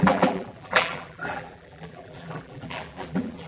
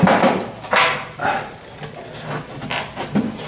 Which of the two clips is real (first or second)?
second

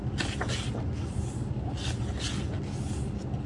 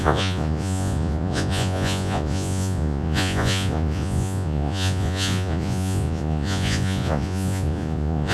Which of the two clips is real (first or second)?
first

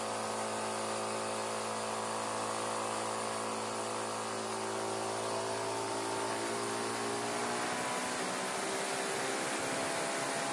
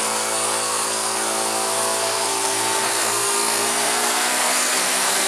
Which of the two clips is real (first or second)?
first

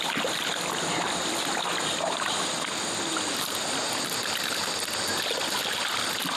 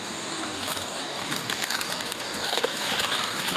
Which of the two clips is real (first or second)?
first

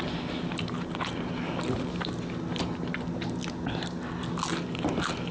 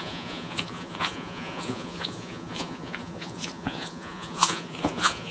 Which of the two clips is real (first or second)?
first